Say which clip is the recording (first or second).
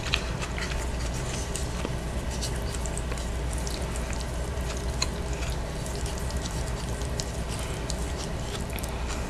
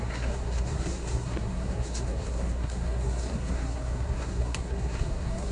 first